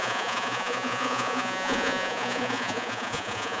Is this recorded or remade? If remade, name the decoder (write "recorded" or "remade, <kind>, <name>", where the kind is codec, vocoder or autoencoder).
remade, vocoder, Vocos